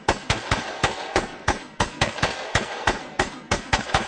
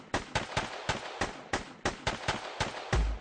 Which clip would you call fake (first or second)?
first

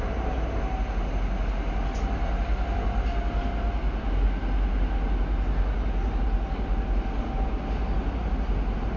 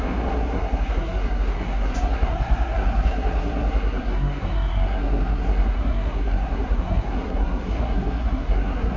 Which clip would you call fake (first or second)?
second